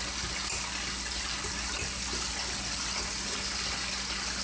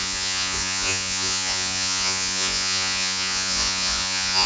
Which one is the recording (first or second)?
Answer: first